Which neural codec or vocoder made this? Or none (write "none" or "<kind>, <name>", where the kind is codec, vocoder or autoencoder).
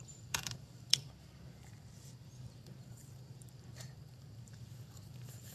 vocoder, BigVGAN v2